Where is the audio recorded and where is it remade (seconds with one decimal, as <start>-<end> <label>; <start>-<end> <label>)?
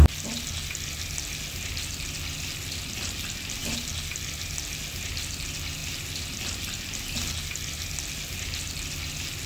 0.0-9.5 recorded